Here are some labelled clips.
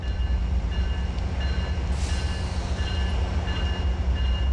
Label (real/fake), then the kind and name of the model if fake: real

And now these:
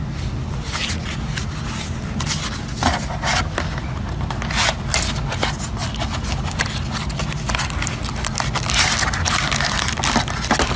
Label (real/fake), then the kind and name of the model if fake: real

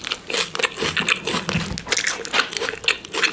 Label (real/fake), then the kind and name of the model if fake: real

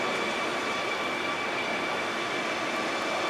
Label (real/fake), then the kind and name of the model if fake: real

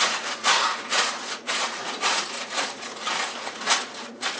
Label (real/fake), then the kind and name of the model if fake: fake, vocoder, Vocos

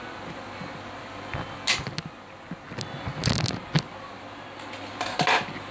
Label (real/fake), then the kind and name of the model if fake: real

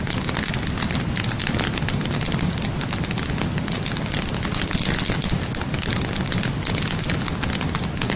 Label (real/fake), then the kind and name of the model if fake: real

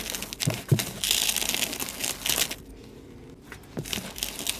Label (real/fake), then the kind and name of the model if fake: real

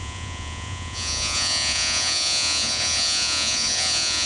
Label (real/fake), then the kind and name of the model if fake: fake, vocoder, Vocos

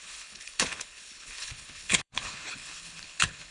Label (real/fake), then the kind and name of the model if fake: fake, codec, HILCodec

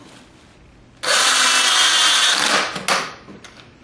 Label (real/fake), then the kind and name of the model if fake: real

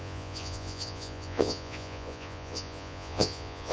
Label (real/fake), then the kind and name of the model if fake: fake, vocoder, Vocos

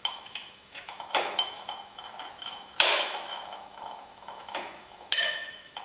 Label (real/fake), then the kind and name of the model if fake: fake, autoencoder, DAC-VAE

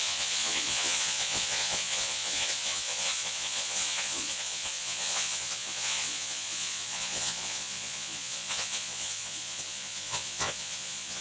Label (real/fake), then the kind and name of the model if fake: fake, vocoder, Vocos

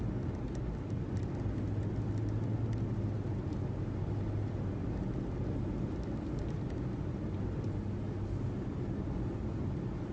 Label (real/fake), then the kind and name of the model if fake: real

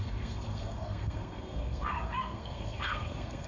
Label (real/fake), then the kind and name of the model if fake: fake, codec, SNAC